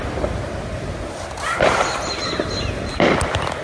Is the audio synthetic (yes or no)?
no